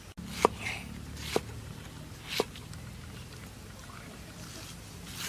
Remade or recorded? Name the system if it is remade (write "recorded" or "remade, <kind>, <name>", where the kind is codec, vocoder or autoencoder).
recorded